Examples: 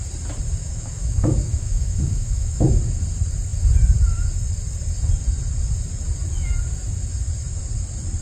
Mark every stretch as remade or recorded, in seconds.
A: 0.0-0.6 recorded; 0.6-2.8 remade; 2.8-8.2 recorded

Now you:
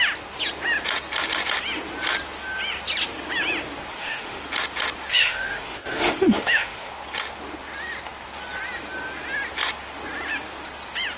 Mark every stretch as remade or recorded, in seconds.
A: 0.0-3.9 recorded; 3.9-4.4 remade; 4.4-5.1 recorded; 5.1-6.9 remade; 6.9-11.2 recorded